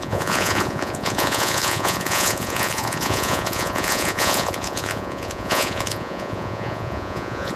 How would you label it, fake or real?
fake